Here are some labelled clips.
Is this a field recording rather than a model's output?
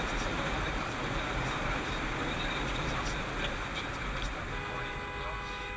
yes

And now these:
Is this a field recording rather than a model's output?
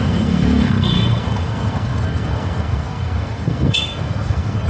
no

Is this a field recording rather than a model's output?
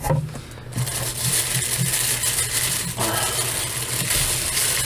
yes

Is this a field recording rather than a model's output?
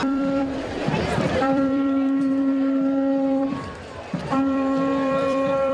no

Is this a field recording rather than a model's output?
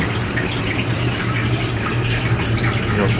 yes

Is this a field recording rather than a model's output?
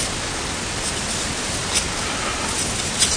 yes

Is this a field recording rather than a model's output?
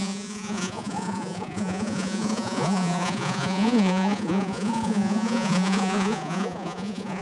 no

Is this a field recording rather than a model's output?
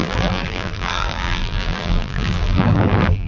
no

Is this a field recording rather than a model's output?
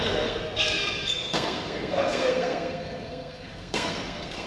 no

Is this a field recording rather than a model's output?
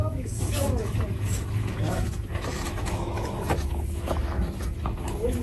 no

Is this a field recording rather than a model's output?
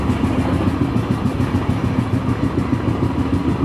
yes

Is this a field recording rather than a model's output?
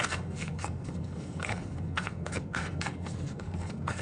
no